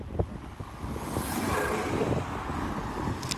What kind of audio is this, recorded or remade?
recorded